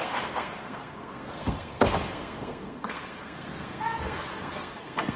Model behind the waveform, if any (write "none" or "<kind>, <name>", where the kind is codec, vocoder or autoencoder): codec, SNAC